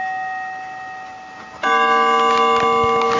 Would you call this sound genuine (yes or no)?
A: yes